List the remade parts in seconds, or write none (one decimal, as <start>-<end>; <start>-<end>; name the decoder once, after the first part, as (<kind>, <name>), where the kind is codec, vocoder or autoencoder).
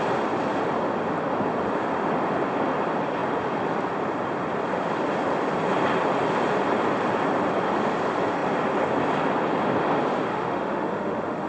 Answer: 10.3-11.5 (autoencoder, DAC-VAE)